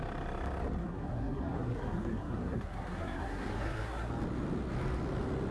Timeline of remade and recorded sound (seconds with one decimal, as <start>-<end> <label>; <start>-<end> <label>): 0.0-0.8 recorded; 0.8-4.1 remade; 4.1-5.5 recorded